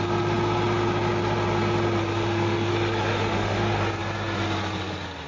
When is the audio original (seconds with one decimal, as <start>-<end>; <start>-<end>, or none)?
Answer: 0.0-2.2; 2.7-3.1; 3.8-5.3